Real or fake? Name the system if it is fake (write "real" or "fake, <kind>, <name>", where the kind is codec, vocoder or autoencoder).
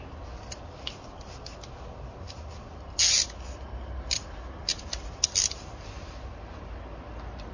real